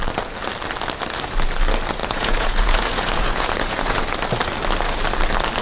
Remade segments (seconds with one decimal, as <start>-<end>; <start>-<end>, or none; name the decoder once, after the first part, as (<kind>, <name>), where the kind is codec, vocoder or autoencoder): 2.0-4.0 (vocoder, Vocos)